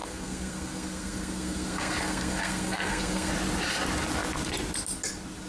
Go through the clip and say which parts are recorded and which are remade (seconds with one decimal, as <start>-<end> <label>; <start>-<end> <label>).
0.0-3.3 remade; 3.3-5.5 recorded